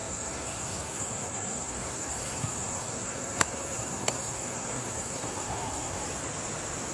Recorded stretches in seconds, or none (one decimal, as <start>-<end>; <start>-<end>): 6.0-6.9

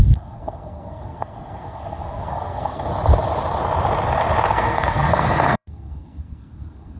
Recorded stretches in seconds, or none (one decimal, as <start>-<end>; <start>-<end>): 2.9-4.5

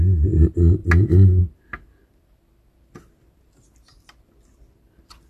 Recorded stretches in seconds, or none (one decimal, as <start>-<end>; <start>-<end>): 0.0-5.3

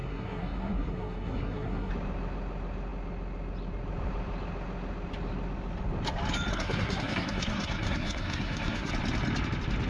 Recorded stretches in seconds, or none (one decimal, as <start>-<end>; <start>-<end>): 1.9-6.5; 8.9-9.9

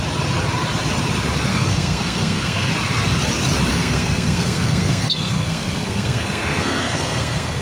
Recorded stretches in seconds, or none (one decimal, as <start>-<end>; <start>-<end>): 0.0-1.5; 2.7-3.7

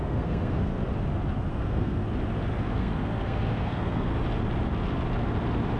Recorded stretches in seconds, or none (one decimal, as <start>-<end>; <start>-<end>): 0.7-1.5; 2.0-2.7; 4.1-5.8

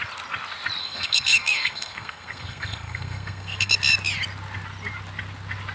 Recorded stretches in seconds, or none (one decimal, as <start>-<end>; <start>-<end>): 0.0-0.8; 3.7-5.7